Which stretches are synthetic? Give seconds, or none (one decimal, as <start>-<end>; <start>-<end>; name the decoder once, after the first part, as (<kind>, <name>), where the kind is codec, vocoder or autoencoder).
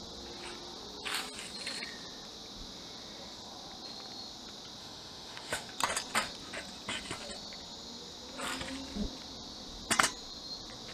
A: 4.8-5.7 (autoencoder, DAC-VAE)